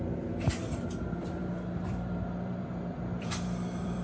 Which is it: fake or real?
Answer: fake